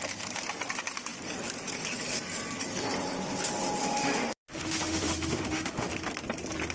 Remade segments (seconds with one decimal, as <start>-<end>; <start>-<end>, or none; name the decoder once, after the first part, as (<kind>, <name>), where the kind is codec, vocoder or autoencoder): 3.8-5.9 (autoencoder, DAC-VAE)